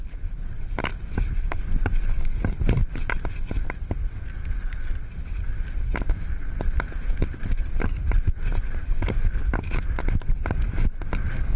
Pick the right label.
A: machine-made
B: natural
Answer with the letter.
B